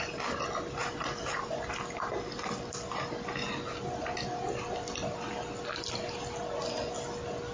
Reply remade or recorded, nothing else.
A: recorded